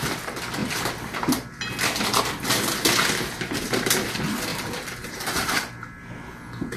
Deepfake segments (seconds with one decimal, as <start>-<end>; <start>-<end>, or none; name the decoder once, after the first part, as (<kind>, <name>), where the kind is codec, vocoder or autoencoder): 4.5-5.5 (vocoder, BigVGAN v2)